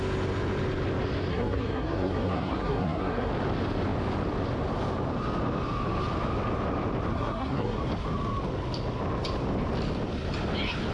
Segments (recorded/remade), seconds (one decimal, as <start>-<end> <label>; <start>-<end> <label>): 0.0-1.3 recorded; 1.3-3.3 remade; 3.3-7.1 recorded; 7.1-7.8 remade; 7.8-10.9 recorded